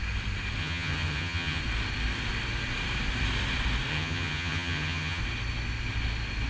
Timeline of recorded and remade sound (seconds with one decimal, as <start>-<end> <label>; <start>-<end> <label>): 0.0-0.6 recorded; 0.6-1.6 remade; 1.6-3.9 recorded; 3.9-5.2 remade; 5.2-6.5 recorded